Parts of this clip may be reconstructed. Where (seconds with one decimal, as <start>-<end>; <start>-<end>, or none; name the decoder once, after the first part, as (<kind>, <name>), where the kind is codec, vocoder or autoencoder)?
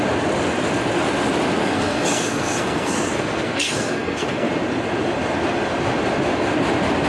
1.6-4.5 (codec, SNAC)